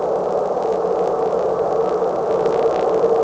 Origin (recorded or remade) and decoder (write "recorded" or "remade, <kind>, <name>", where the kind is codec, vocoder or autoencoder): recorded